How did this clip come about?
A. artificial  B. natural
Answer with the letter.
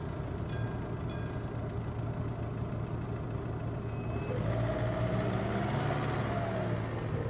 B